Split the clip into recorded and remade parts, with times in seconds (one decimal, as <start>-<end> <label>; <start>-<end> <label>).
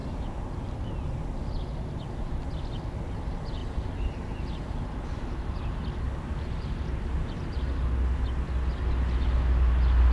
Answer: 0.0-10.1 recorded